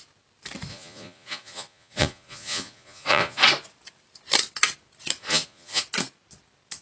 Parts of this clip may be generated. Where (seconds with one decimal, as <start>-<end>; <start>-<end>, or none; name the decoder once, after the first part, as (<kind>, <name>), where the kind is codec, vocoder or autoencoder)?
0.7-3.4 (vocoder, Vocos); 5.2-5.8

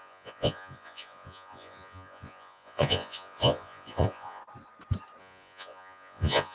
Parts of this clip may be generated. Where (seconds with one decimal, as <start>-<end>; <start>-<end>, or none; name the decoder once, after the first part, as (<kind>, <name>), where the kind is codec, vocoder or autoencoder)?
0.0-4.4 (vocoder, Vocos); 5.2-6.5

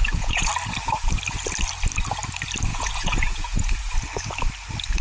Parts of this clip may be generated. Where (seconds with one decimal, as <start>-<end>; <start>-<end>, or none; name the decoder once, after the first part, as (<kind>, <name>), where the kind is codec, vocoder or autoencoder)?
0.0-0.5 (vocoder, Vocos); 2.7-3.9

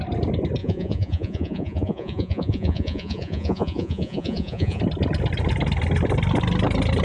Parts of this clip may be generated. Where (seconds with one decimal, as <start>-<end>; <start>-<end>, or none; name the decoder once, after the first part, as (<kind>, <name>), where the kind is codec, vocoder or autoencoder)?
0.6-4.8 (vocoder, Vocos)

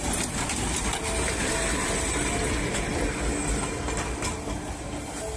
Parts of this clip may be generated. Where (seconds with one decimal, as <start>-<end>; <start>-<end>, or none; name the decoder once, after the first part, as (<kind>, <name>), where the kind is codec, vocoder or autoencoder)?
none

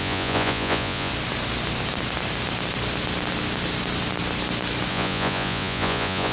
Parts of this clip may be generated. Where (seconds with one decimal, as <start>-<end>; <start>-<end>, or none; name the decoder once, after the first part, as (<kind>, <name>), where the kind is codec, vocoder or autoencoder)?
0.0-1.1 (vocoder, Vocos); 4.9-6.3

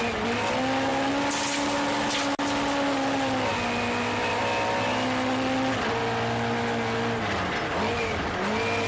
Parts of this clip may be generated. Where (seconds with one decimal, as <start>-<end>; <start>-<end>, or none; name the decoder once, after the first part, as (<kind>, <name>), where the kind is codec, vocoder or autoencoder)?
none